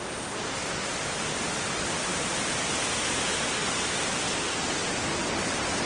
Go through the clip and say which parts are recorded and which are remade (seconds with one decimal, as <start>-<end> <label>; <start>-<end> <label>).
0.0-5.9 recorded